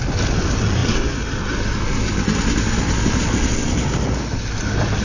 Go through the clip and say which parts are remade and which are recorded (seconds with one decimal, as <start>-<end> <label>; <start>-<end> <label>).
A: 0.0-5.0 recorded